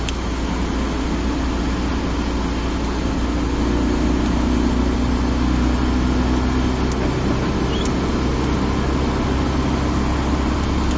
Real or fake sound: real